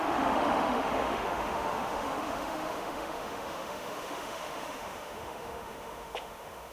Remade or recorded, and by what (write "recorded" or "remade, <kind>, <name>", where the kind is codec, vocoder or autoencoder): remade, autoencoder, DAC-VAE